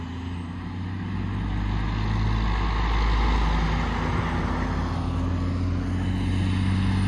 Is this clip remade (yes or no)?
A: no